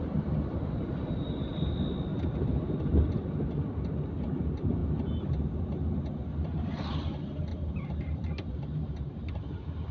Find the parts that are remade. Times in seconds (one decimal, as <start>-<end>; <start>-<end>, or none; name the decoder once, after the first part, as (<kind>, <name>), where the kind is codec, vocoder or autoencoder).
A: 0.0-1.5 (vocoder, BigVGAN v2); 2.1-3.1; 7.5-9.9